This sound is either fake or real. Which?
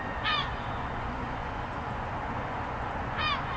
fake